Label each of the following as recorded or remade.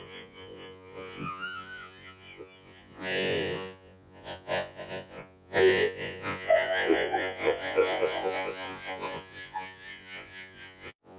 remade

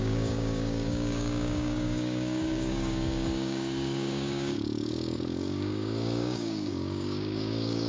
remade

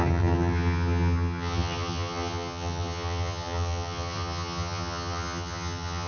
remade